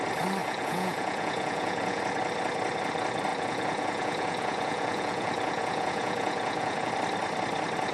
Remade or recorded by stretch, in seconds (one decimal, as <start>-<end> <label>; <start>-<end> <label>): 0.0-0.4 recorded; 0.4-2.0 remade; 2.0-3.3 recorded; 3.3-6.9 remade; 6.9-7.9 recorded